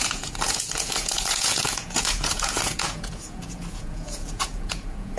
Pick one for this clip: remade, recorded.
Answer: remade